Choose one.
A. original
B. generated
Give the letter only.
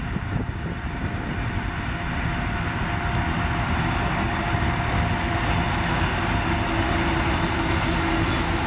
A